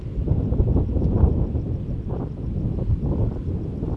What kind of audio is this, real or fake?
real